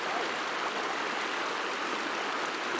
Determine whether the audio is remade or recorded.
recorded